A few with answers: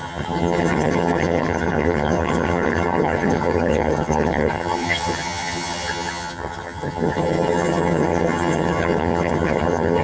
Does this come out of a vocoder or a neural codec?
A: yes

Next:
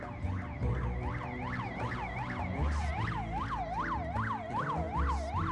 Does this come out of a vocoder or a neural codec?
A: no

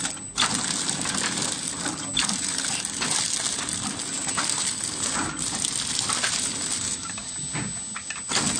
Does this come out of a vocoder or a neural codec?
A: no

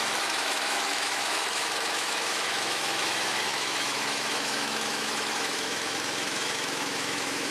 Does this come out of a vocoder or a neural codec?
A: yes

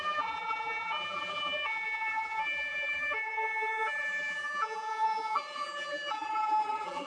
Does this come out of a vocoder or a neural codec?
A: yes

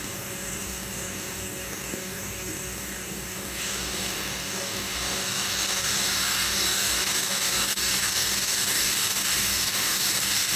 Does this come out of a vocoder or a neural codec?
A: yes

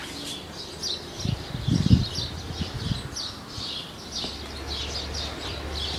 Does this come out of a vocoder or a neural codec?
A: no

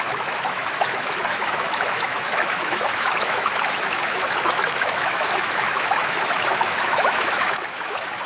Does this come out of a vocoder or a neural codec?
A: yes